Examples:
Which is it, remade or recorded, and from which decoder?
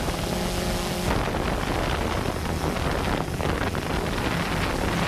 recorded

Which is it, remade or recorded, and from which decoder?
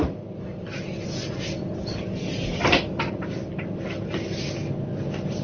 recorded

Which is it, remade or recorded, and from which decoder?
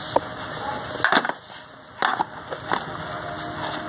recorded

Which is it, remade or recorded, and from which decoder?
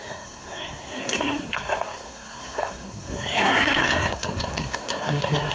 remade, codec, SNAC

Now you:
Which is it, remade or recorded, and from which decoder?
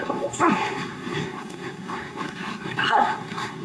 remade, codec, SNAC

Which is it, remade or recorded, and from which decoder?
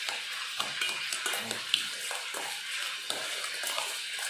recorded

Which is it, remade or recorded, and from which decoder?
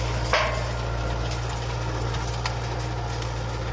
recorded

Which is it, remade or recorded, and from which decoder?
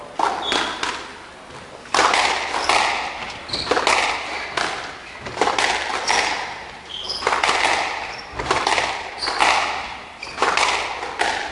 recorded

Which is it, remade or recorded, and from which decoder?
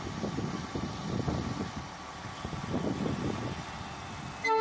recorded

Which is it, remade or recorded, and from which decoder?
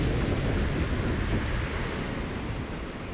recorded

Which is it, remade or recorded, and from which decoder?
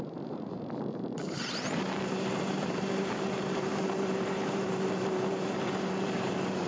remade, vocoder, BigVGAN v2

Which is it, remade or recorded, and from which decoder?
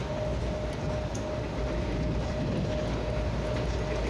recorded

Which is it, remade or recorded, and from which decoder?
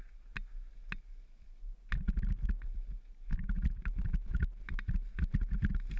recorded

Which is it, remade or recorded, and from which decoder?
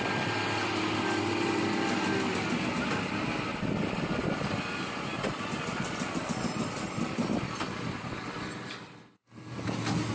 recorded